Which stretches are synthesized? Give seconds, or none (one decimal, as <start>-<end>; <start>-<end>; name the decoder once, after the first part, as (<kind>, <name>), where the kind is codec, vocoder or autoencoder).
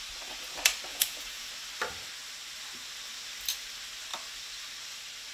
0.9-1.5 (vocoder, Vocos)